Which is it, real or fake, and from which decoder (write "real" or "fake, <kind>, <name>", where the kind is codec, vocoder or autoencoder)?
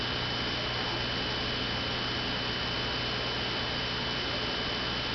real